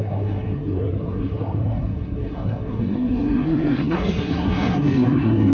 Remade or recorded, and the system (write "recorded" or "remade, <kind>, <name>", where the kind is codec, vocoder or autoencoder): remade, codec, SNAC